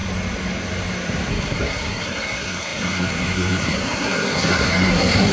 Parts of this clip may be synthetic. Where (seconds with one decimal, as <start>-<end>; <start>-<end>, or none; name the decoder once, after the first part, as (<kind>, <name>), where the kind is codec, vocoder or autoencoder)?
1.3-5.3 (codec, SNAC)

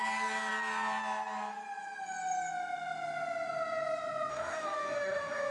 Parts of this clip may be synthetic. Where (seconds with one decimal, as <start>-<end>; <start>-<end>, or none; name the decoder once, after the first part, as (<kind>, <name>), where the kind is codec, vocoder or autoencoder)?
4.3-5.5 (codec, DAC)

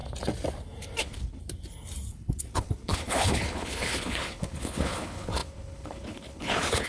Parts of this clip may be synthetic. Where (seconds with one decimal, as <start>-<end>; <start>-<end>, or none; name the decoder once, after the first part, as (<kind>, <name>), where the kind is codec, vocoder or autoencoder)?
1.0-1.4 (codec, HILCodec); 2.1-6.9

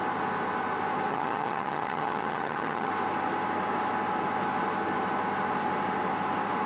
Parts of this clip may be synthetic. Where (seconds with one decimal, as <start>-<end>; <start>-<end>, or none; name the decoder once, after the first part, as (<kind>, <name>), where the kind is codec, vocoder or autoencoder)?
1.1-2.9 (vocoder, HiFi-GAN)

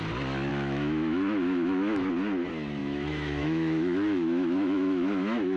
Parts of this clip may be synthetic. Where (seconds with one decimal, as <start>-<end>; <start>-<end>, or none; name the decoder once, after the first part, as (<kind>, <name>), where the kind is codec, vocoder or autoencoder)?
0.5-2.1 (autoencoder, DAC-VAE); 2.8-5.6

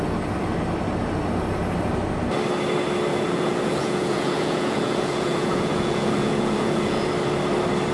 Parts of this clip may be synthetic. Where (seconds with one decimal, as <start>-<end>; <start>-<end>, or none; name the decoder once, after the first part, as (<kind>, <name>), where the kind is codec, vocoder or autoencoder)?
3.1-7.1 (vocoder, Vocos)

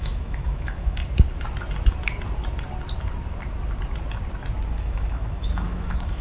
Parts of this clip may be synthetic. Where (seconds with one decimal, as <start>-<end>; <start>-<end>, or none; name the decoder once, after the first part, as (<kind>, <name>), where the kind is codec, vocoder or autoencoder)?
0.0-1.0 (autoencoder, DAC-VAE); 4.7-6.2

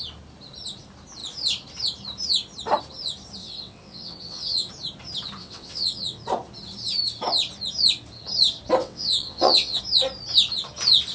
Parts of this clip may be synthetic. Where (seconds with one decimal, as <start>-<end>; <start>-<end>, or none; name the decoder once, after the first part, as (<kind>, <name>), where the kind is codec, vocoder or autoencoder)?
3.4-4.7 (vocoder, WaveNeXt); 5.4-6.2; 8.8-9.8